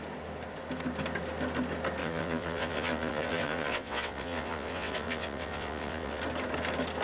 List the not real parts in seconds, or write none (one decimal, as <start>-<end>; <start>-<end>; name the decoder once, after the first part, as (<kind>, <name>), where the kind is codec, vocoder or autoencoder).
2.0-6.2 (vocoder, WaveNeXt)